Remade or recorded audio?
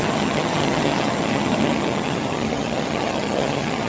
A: remade